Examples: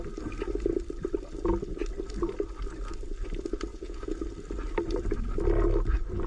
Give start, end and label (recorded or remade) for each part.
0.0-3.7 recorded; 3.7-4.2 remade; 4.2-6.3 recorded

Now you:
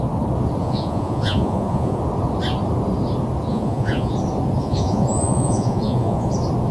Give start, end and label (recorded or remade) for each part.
0.0-0.6 recorded; 0.6-2.0 remade; 2.0-3.5 recorded; 3.5-4.1 remade; 4.1-4.6 recorded; 4.6-6.3 remade; 6.3-6.7 recorded